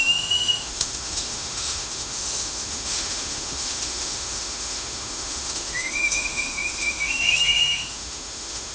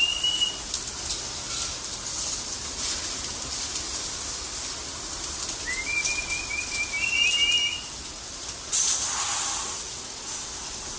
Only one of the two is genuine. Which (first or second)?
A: second